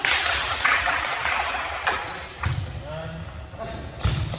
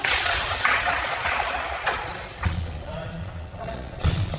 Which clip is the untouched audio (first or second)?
first